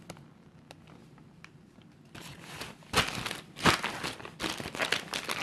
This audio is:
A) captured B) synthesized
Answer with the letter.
A